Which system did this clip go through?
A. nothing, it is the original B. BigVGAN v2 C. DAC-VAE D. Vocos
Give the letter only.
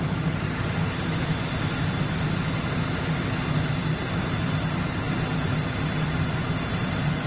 A